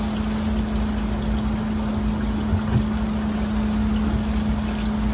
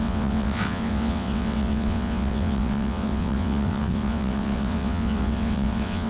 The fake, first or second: second